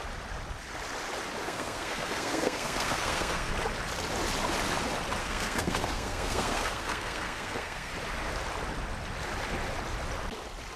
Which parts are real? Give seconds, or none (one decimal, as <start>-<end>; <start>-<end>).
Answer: 0.0-1.4; 3.5-5.2; 7.9-10.8